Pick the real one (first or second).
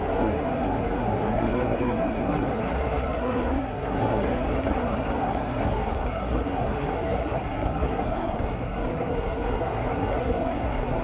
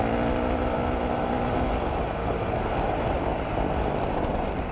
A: second